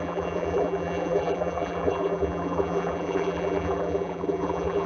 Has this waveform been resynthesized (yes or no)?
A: yes